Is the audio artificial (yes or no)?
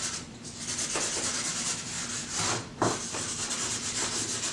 no